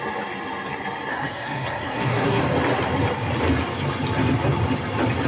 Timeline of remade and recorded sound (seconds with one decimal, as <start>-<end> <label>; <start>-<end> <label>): 0.0-1.1 recorded; 1.1-2.4 remade; 2.4-5.3 recorded